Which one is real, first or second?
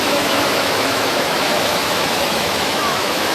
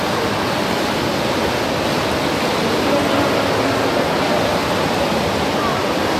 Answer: second